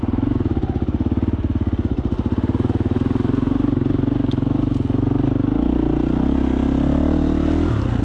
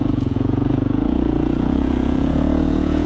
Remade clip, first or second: second